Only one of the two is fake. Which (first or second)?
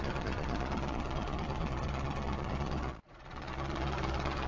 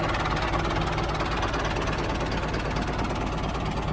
first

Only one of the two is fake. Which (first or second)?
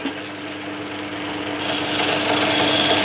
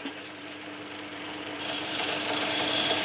second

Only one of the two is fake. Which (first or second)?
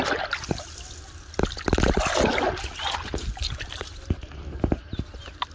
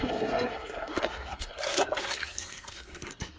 second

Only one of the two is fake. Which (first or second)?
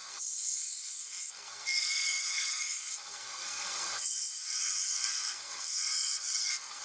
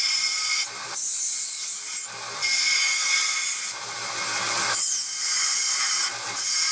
first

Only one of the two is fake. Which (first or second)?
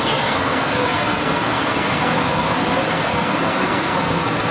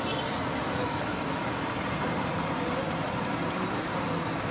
first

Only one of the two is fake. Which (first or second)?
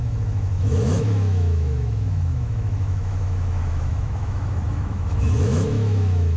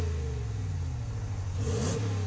first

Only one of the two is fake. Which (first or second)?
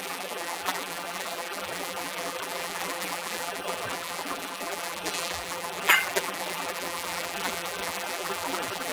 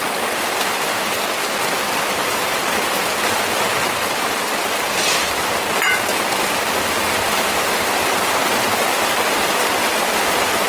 first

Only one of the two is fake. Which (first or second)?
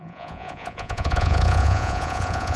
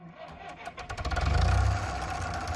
first